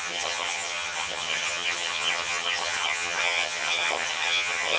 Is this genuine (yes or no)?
no